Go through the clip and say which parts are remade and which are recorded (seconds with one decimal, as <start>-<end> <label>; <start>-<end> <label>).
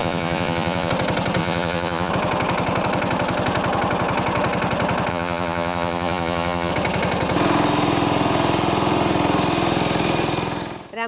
0.0-0.9 remade; 0.9-1.4 recorded; 1.4-2.1 remade; 2.1-5.1 recorded; 5.1-6.7 remade; 6.7-11.1 recorded